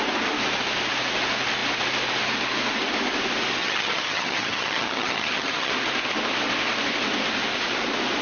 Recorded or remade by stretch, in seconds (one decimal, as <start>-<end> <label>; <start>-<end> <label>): 0.0-3.6 recorded; 3.6-5.7 remade; 5.7-8.2 recorded